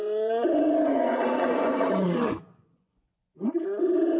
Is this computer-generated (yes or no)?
yes